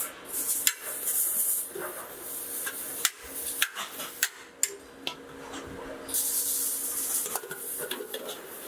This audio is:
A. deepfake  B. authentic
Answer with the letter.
B